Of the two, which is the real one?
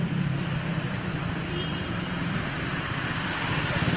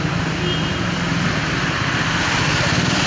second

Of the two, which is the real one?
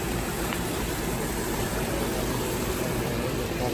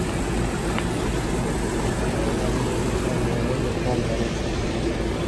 second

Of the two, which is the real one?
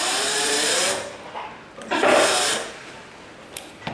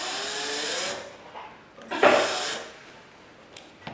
second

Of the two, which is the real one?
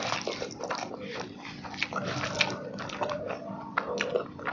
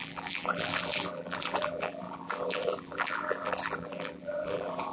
first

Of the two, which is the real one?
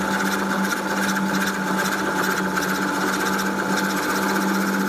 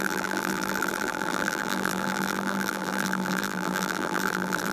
first